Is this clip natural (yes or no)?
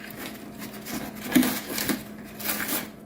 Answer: yes